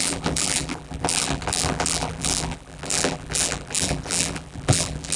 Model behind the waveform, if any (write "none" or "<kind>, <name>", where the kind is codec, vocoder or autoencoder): vocoder, BigVGAN v2